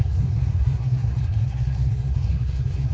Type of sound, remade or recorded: remade